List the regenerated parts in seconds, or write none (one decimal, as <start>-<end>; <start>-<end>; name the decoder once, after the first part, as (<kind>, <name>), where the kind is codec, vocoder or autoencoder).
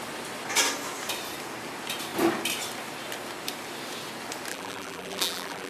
4.5-5.7 (vocoder, BigVGAN v2)